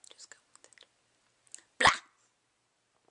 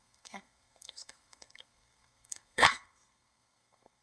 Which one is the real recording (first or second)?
first